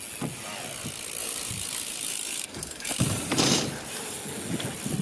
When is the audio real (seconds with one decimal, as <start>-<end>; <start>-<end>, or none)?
0.0-1.2; 4.2-5.0